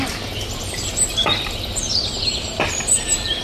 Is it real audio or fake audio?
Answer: real